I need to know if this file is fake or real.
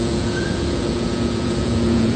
fake